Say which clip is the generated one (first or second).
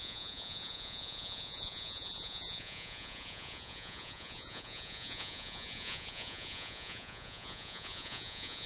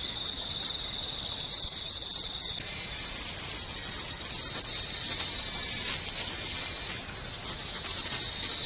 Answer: first